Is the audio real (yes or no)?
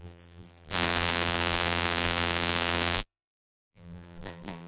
no